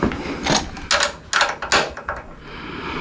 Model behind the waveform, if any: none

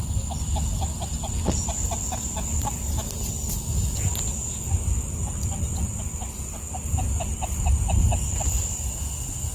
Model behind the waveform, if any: none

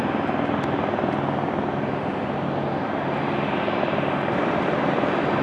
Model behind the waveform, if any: none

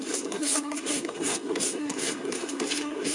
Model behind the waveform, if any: codec, SNAC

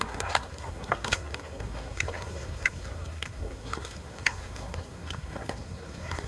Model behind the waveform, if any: codec, SNAC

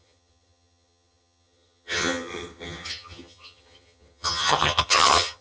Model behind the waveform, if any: vocoder, HiFi-GAN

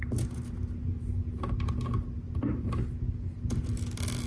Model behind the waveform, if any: none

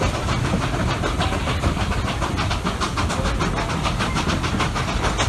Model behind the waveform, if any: none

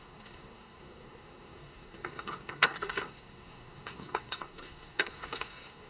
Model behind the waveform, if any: codec, SNAC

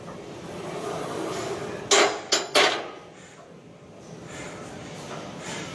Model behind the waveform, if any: none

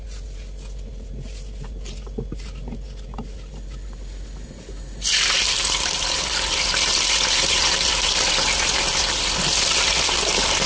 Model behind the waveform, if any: none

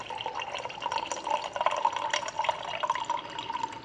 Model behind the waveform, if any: none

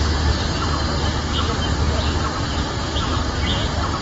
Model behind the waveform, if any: none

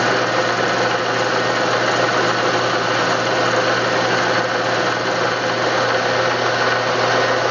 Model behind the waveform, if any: none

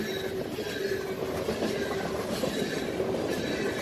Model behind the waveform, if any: none